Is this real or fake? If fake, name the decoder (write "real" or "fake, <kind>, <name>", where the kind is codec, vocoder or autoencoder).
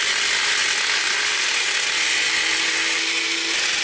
real